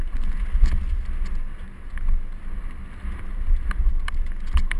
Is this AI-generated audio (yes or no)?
no